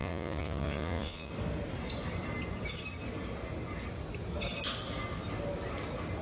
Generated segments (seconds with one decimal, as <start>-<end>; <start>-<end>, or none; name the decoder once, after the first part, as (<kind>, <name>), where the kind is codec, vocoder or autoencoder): 0.0-1.3 (vocoder, Vocos)